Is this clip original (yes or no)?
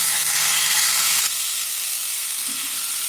no